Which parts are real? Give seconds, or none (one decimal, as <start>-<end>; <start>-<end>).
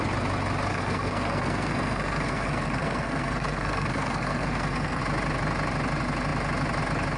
0.0-0.7; 5.0-7.2